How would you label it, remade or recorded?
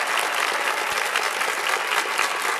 recorded